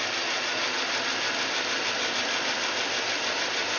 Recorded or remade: recorded